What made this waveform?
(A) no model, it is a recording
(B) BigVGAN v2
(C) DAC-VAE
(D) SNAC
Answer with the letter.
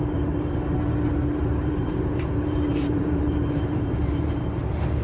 B